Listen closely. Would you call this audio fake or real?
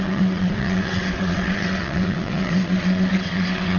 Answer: fake